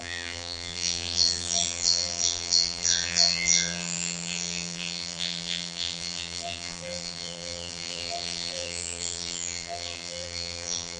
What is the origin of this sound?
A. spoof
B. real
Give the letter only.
A